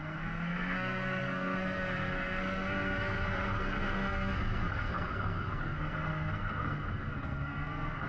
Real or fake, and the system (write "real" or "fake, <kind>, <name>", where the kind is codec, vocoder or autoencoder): fake, codec, SNAC